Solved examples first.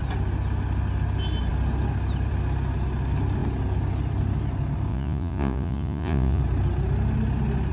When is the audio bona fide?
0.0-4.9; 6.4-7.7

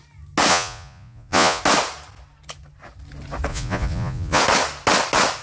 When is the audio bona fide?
0.0-0.5; 1.6-3.5; 4.4-5.4

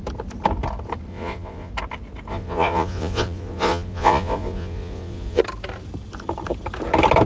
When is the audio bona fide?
0.0-1.1; 1.7-2.3; 5.4-7.3

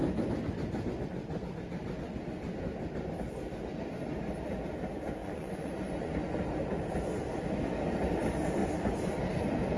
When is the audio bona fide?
0.0-5.2; 6.1-9.8

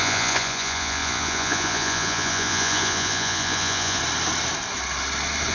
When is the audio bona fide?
4.0-5.5

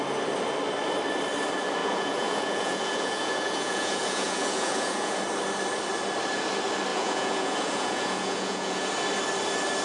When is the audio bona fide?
0.0-1.8; 5.2-6.9; 8.9-9.8

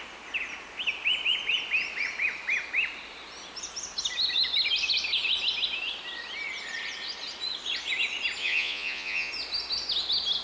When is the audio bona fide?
0.0-8.4; 9.3-10.4